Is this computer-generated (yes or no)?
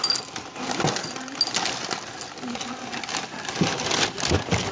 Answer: no